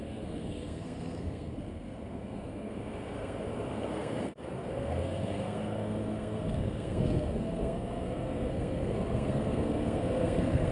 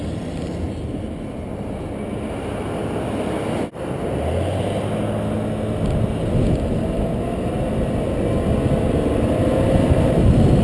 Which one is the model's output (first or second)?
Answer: first